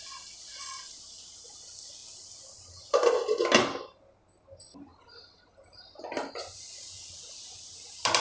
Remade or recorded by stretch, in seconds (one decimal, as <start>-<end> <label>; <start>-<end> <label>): 0.0-8.2 recorded